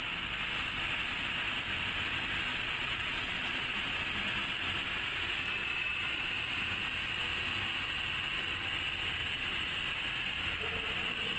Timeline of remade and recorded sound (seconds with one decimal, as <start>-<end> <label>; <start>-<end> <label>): 0.0-2.5 recorded; 2.5-3.9 remade; 3.9-5.6 recorded; 5.6-6.3 remade; 6.3-9.2 recorded; 9.2-9.8 remade; 9.8-11.4 recorded